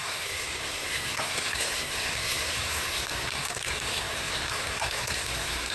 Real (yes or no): no